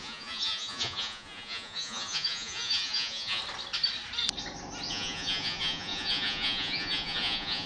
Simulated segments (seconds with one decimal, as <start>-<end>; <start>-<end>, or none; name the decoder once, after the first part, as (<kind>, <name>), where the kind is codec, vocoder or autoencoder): 0.0-3.4 (vocoder, Vocos); 4.9-7.7